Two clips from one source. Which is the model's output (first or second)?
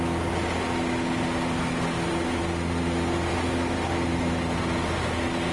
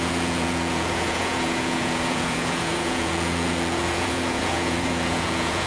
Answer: second